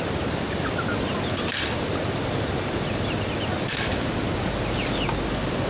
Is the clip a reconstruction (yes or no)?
no